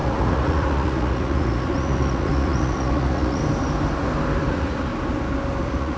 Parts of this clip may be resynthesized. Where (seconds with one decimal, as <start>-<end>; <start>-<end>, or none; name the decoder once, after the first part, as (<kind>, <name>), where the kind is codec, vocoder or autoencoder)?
0.0-3.4 (vocoder, Vocos); 4.5-4.9; 5.6-6.0